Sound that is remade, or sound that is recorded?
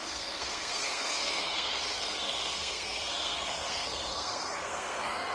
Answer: remade